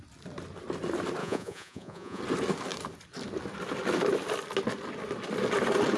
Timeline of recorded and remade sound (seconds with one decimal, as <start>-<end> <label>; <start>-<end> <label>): 0.0-1.2 recorded; 1.2-2.2 remade; 2.2-6.0 recorded